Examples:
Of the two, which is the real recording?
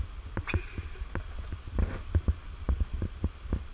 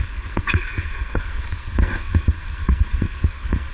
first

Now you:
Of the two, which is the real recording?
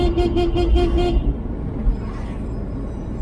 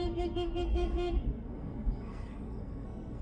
first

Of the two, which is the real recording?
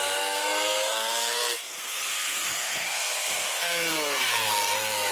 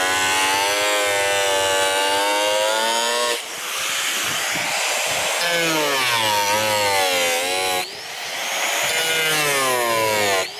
second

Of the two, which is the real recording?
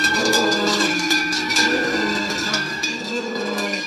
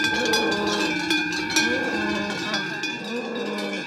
second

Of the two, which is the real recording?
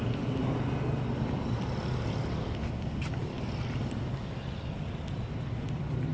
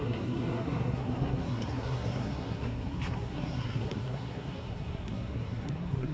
first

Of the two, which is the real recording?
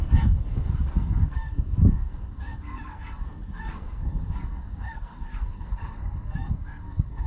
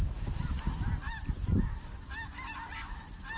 second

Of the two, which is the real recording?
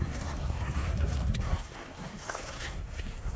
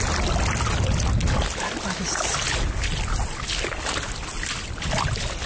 second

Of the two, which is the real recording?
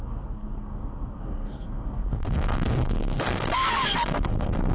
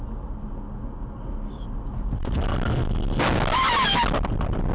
second